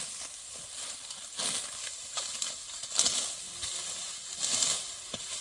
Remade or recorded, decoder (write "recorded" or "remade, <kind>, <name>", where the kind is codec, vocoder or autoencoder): recorded